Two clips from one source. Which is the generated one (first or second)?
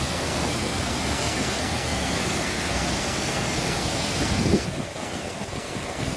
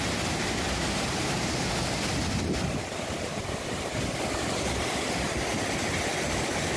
first